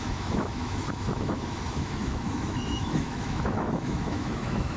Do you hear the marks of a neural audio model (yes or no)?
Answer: yes